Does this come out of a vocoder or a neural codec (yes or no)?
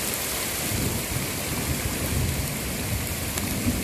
no